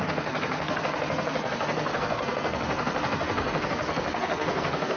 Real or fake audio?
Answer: fake